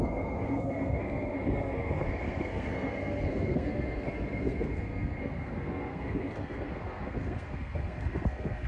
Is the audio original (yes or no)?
no